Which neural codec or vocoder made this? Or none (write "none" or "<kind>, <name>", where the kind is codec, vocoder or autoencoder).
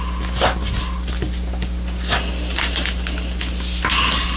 none